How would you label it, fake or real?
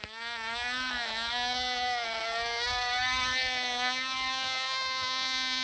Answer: fake